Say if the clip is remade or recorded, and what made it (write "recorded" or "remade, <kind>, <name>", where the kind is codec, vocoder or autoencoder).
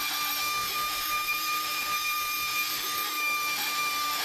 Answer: remade, autoencoder, DAC-VAE